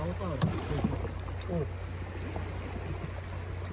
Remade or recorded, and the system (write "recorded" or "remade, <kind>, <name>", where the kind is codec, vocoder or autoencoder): recorded